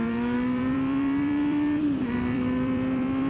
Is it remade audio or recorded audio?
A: remade